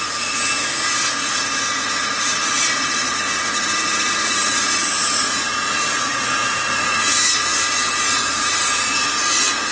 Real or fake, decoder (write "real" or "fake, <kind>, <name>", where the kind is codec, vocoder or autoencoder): fake, vocoder, Vocos